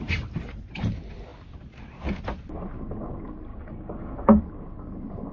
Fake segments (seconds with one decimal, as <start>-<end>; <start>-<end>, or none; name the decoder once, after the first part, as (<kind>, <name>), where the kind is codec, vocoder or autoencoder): 3.5-4.4 (codec, DAC)